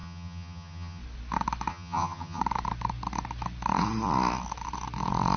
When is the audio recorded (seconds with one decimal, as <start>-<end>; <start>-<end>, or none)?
1.0-1.7; 2.4-5.4